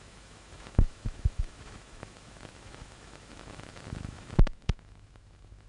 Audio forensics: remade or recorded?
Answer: remade